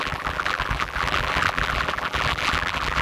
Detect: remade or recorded remade